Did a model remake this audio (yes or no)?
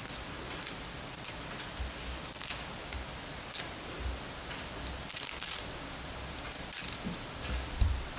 no